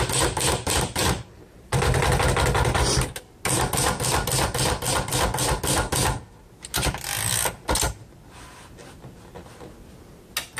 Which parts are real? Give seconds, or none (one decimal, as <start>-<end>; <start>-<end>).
0.0-1.0; 1.7-10.6